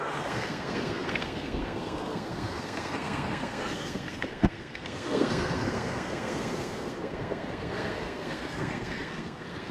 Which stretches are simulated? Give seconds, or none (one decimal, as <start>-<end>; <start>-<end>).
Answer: 0.0-9.7